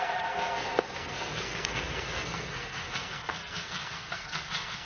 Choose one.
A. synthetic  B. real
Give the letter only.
A